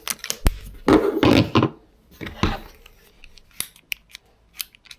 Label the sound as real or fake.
real